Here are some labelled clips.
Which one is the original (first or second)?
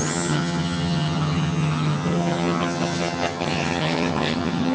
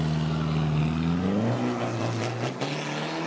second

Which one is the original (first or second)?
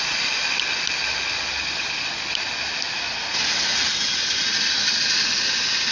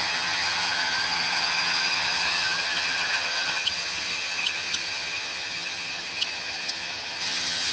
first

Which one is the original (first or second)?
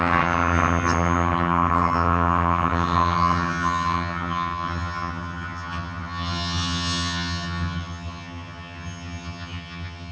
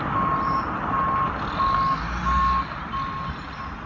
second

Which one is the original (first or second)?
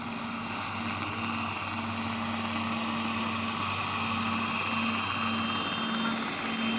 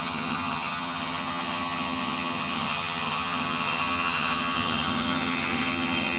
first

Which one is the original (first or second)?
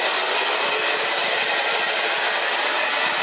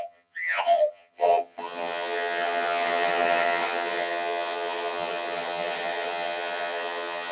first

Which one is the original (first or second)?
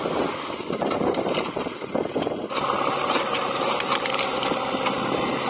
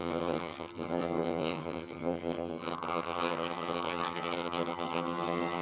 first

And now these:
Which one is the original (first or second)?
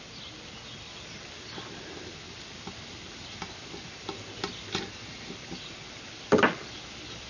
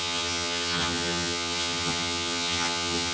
first